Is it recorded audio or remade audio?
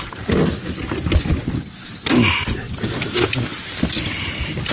recorded